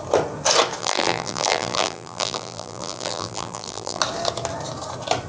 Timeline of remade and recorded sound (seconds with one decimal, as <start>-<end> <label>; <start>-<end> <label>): 0.0-0.8 recorded; 0.8-4.0 remade; 4.0-5.3 recorded